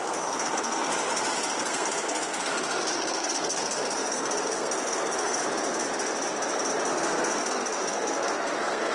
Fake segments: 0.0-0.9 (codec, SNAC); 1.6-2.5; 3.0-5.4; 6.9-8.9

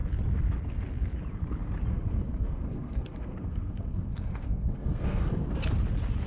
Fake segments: 1.9-5.3 (codec, SNAC)

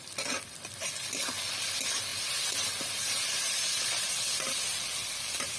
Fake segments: none